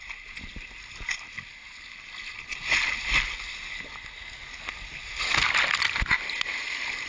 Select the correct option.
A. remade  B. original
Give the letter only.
B